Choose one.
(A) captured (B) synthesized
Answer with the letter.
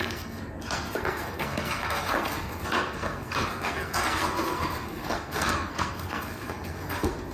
B